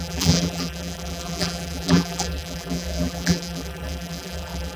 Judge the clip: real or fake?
fake